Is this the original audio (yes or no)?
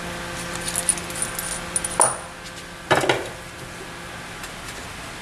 yes